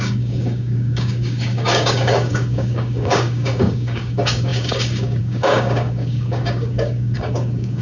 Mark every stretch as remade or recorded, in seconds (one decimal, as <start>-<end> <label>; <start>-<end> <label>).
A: 0.0-7.8 remade